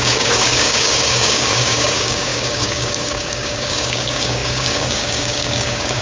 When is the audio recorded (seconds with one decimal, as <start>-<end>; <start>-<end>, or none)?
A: none